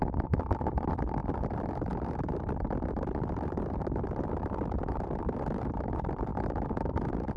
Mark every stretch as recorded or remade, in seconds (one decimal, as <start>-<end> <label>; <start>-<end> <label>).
0.0-1.2 recorded; 1.2-5.2 remade; 5.2-7.4 recorded